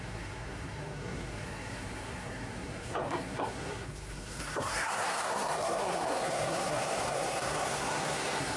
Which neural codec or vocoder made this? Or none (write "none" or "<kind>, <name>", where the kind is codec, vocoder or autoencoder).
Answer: codec, SNAC